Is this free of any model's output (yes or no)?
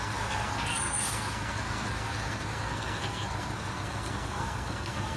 no